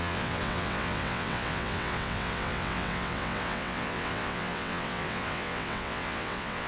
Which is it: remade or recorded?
remade